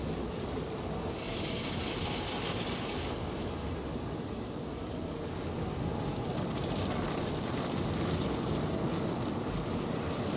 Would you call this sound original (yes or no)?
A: yes